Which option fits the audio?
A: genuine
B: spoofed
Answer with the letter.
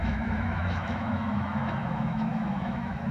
B